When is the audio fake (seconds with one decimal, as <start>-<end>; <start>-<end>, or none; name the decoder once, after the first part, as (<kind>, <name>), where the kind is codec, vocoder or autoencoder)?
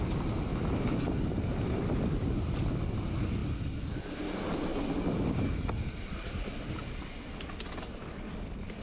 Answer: 1.5-2.1 (vocoder, BigVGAN v2); 3.4-4.0